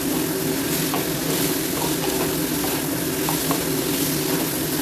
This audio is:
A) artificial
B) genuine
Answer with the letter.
B